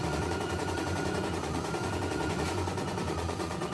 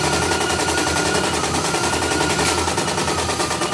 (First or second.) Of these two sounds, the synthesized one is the first